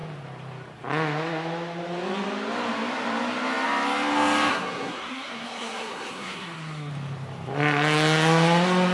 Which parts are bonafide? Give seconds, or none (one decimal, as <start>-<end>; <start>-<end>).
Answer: 0.0-4.5; 6.9-8.9